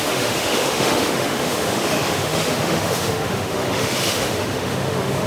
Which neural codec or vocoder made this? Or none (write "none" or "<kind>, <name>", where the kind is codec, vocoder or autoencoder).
autoencoder, DAC-VAE